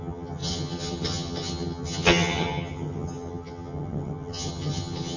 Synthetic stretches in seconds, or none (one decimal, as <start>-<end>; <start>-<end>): 0.0-5.2